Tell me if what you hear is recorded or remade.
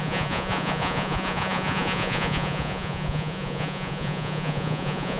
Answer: remade